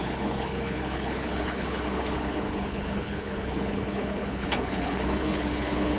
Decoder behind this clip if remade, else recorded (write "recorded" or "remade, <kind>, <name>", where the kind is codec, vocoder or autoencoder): remade, codec, HILCodec